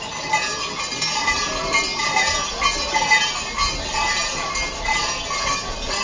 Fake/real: real